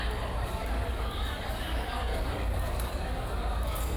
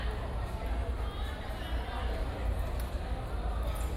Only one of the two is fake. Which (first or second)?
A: first